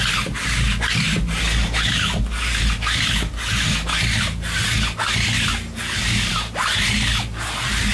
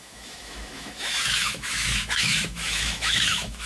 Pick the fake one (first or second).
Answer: second